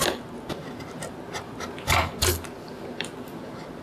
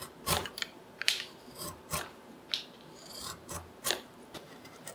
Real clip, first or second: first